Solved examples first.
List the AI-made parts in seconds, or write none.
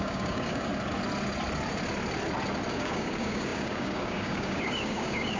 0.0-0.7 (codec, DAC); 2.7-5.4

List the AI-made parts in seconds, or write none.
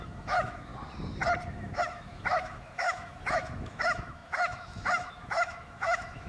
0.0-0.7 (autoencoder, DAC-VAE); 1.5-6.3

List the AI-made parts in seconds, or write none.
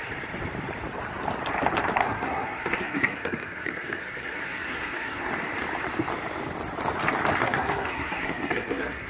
2.0-5.3 (codec, SNAC); 7.4-9.1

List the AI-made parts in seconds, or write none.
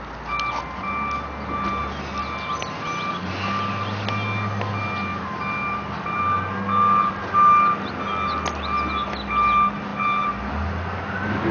none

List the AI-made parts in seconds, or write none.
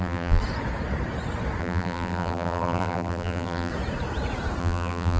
0.0-0.4 (vocoder, BigVGAN v2); 1.6-3.7; 4.6-5.2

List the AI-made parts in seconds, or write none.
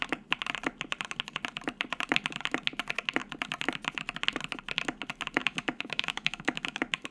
5.4-7.1 (autoencoder, DAC-VAE)